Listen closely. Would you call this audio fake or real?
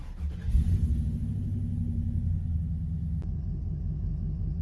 real